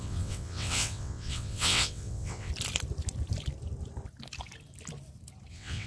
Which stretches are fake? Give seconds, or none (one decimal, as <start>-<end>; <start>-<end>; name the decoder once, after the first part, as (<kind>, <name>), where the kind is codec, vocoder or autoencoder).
0.0-2.5 (vocoder, WaveNeXt); 5.5-5.9